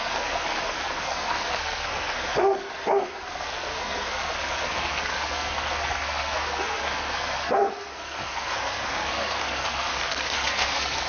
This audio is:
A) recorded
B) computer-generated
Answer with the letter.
B